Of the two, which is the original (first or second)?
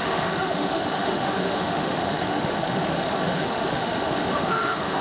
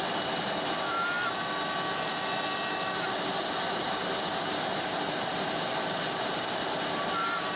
second